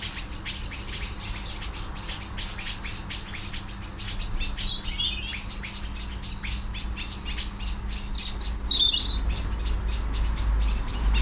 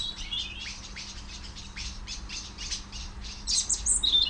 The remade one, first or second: second